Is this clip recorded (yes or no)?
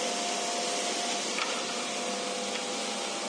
yes